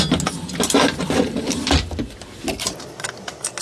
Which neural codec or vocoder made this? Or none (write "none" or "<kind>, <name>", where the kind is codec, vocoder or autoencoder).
none